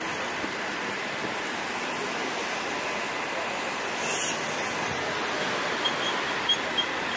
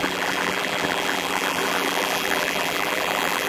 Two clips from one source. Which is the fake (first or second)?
second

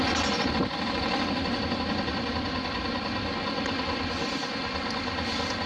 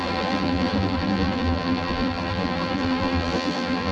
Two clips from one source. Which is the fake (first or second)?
second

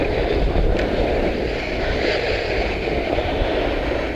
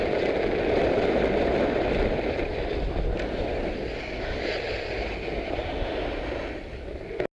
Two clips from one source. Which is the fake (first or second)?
first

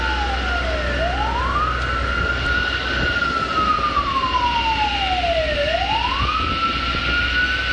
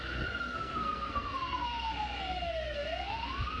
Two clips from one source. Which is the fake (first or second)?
second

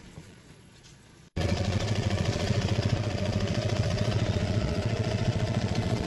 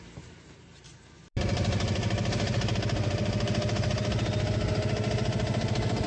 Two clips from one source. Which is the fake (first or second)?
first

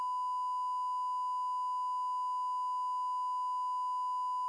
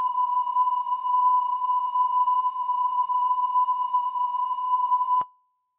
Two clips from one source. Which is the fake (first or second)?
second